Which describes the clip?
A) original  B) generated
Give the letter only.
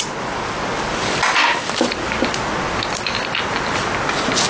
A